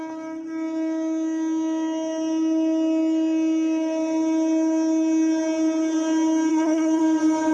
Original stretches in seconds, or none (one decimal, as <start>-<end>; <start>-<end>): 0.0-6.5; 7.0-7.5